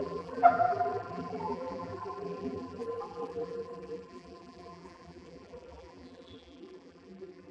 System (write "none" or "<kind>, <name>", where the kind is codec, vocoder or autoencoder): vocoder, BigVGAN v2